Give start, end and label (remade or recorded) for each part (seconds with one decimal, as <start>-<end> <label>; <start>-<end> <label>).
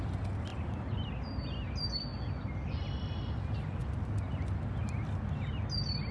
0.0-6.1 recorded